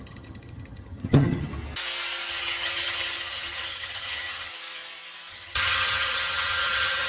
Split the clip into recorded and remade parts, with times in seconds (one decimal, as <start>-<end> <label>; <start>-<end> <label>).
0.0-1.5 remade; 1.5-2.3 recorded; 2.3-4.5 remade; 4.5-5.3 recorded; 5.3-7.1 remade